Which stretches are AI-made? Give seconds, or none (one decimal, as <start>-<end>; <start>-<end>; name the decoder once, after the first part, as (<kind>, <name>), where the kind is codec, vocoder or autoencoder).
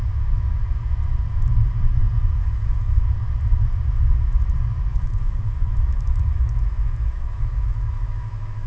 2.4-3.0 (autoencoder, DAC-VAE); 4.9-8.7